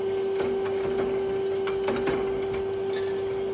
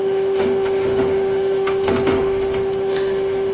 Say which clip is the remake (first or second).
second